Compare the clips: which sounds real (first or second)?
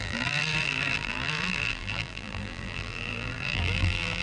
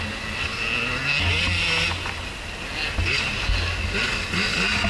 second